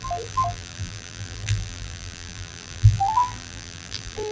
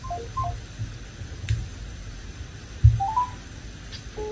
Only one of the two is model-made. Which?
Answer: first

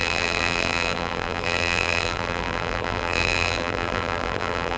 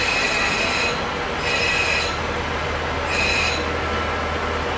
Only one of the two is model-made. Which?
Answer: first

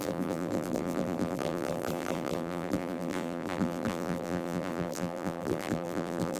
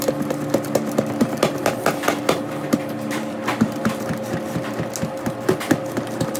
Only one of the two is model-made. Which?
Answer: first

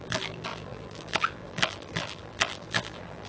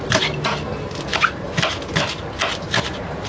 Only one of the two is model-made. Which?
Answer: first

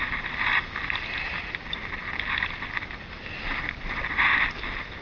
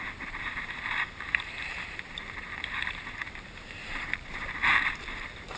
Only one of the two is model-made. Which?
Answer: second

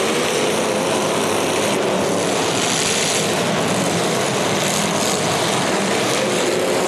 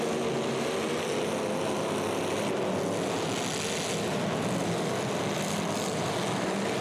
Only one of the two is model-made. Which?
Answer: first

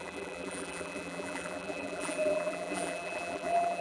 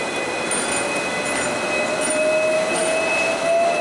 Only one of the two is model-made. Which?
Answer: first